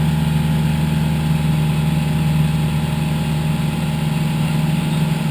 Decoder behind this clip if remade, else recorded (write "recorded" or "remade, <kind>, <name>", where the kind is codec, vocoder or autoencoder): recorded